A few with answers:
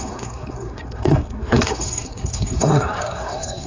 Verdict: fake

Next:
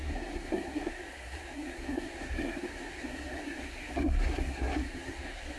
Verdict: fake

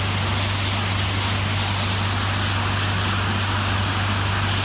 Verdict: real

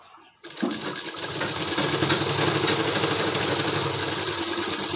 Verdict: real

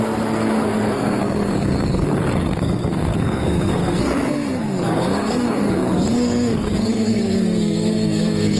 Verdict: fake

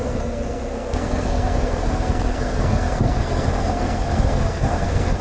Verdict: fake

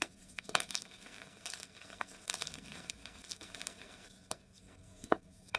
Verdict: fake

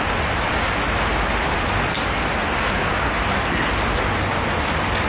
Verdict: real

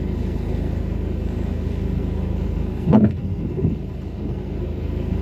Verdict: fake